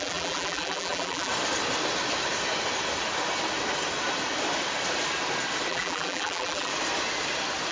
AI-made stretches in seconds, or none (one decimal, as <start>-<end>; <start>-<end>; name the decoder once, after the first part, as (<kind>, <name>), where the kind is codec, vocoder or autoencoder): 0.0-1.3 (vocoder, BigVGAN v2); 5.7-6.7